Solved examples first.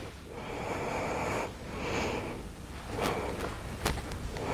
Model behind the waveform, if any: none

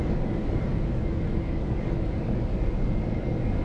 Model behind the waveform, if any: codec, DAC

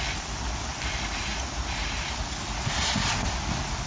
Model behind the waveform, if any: none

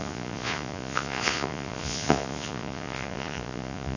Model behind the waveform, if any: vocoder, Vocos